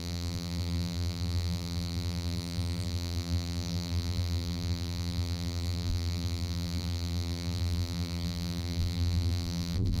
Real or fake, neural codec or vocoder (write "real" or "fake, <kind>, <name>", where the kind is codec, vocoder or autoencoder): fake, vocoder, BigVGAN v2